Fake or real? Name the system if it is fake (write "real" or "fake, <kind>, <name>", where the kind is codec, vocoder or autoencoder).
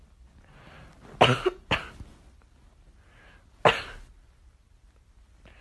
real